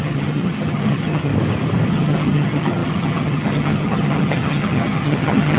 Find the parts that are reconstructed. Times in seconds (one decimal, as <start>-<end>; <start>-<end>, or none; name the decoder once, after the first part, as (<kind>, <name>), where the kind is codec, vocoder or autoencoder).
0.0-1.3 (vocoder, HiFi-GAN); 1.9-5.6